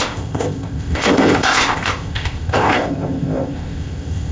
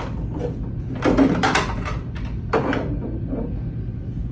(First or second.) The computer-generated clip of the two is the first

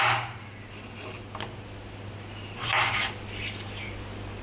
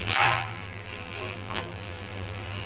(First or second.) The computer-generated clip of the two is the second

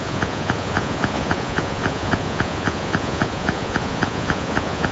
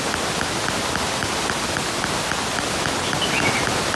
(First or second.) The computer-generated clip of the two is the first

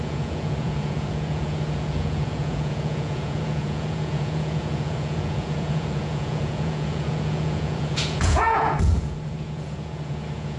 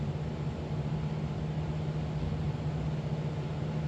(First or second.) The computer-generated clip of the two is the first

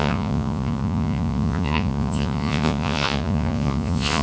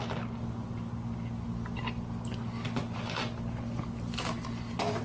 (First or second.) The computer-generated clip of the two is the first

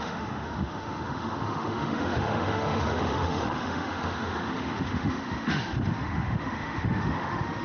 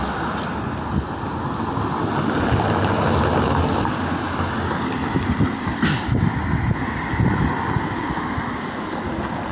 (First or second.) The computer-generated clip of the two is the first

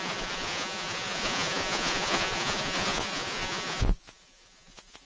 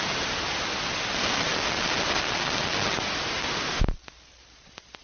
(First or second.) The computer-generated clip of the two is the first